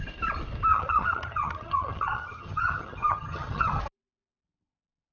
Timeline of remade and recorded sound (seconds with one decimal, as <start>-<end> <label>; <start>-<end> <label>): 0.0-0.7 recorded; 0.7-3.8 remade; 3.8-5.1 recorded